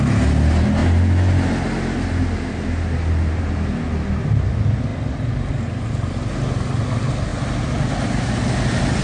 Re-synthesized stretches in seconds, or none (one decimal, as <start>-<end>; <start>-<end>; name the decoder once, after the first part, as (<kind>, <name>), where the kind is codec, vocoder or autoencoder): none